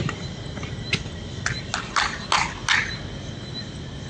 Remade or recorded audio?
recorded